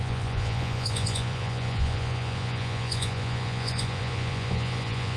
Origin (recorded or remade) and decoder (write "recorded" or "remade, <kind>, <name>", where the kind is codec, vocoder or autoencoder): remade, vocoder, Vocos